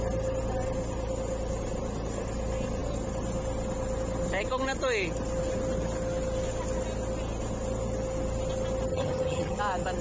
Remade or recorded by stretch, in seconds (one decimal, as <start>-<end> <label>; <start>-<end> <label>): 0.0-8.9 recorded; 8.9-9.6 remade; 9.6-10.0 recorded